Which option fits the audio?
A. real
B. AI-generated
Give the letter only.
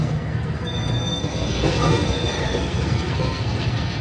B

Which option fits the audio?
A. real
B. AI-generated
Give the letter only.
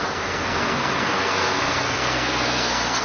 B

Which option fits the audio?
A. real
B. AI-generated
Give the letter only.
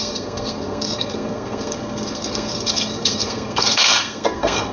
B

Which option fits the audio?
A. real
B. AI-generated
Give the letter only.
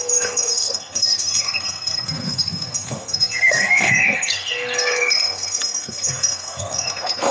B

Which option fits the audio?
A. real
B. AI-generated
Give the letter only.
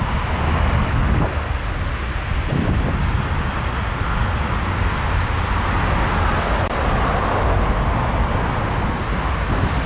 A